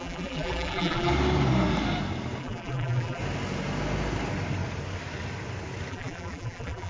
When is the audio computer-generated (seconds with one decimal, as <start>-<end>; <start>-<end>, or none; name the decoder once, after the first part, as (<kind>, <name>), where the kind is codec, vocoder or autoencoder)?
0.0-1.1 (vocoder, BigVGAN v2); 2.4-3.2; 5.9-6.9